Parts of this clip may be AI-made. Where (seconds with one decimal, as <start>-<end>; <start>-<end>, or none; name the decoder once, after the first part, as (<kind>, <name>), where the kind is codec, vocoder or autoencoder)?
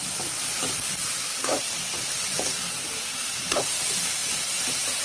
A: 4.2-5.0 (vocoder, BigVGAN v2)